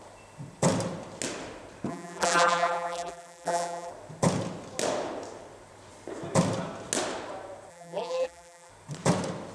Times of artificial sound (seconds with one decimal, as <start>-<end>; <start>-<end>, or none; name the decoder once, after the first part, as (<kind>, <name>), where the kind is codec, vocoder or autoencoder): 1.9-3.9 (vocoder, BigVGAN v2); 7.7-8.7